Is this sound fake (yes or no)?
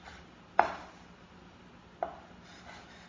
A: no